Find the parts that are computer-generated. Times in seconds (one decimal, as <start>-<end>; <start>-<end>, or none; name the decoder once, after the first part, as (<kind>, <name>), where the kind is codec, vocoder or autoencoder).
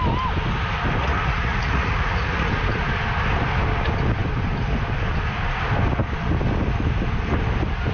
1.0-2.5 (vocoder, Vocos)